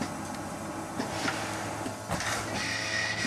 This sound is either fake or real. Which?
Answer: real